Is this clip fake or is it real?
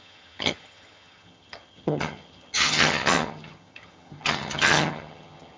fake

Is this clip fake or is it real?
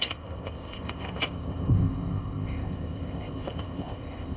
fake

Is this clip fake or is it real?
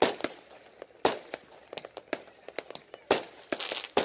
real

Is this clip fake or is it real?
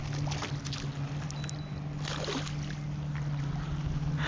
real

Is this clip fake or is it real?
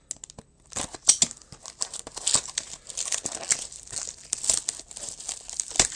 real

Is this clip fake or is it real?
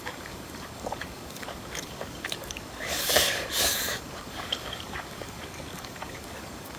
fake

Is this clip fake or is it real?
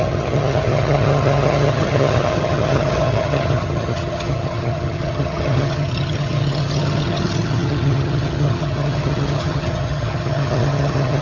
fake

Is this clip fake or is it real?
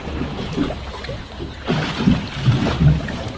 real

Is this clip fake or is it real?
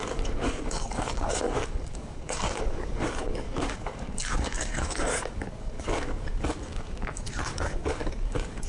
fake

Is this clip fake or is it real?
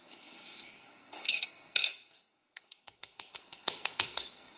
fake